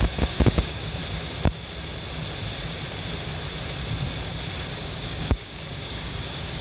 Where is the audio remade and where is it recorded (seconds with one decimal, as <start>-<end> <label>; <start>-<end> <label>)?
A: 0.0-1.0 remade; 1.0-4.7 recorded; 4.7-6.6 remade